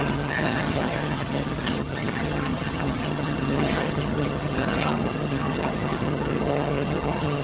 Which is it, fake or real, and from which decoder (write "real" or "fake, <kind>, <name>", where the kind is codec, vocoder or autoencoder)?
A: fake, vocoder, HiFi-GAN